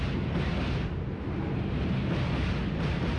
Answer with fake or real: real